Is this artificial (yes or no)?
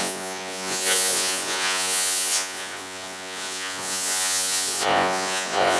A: yes